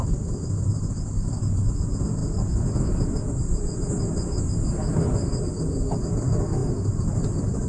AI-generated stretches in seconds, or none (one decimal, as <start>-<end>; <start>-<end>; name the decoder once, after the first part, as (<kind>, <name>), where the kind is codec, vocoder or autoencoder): none